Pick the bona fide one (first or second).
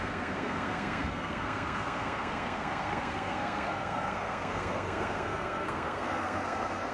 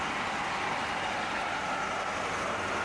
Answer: second